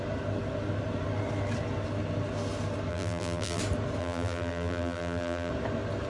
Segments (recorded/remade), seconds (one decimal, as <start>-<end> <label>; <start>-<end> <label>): 0.0-2.9 recorded; 2.9-3.6 remade; 3.6-4.0 recorded; 4.0-5.5 remade; 5.5-6.1 recorded